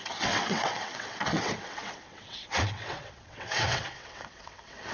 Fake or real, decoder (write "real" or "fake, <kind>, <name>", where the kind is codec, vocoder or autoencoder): fake, vocoder, WaveNeXt